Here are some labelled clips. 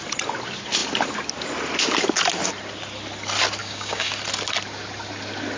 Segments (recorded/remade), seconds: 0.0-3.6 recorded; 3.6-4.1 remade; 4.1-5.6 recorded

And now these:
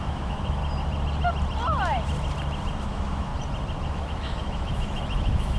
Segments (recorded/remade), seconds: 0.0-0.6 remade; 0.6-2.8 recorded; 2.8-3.3 remade; 3.3-3.9 recorded; 3.9-5.6 remade

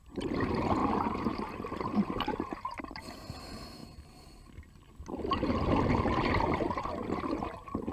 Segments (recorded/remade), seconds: 0.0-3.8 remade; 3.8-6.0 recorded; 6.0-7.9 remade